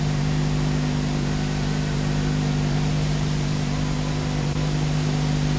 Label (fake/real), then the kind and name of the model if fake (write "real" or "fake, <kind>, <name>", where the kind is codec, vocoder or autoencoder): real